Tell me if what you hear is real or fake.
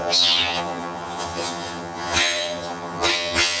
fake